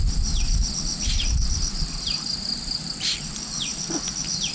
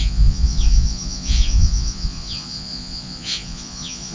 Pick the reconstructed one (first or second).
second